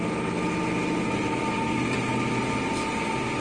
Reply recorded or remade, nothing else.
recorded